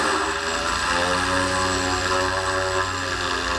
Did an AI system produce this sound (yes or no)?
no